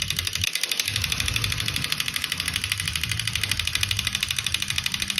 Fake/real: real